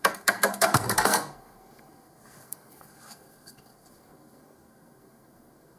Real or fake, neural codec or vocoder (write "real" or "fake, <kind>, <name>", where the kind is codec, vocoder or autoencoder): fake, codec, SNAC